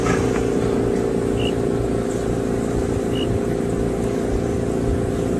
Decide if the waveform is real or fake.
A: real